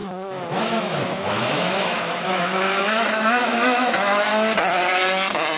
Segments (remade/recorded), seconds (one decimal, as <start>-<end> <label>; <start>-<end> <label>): 0.0-4.3 remade; 4.3-5.6 recorded